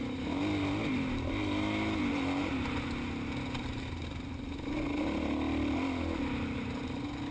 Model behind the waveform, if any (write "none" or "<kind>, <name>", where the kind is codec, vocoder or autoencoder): none